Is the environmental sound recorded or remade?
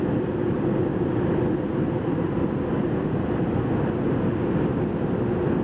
recorded